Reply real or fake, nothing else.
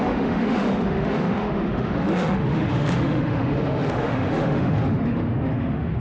fake